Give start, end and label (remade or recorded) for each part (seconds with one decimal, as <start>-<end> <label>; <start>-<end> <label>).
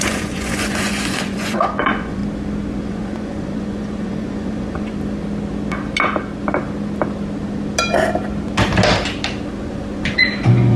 0.0-2.2 remade; 2.2-2.8 recorded; 2.8-4.9 remade; 4.9-9.6 recorded; 9.6-10.8 remade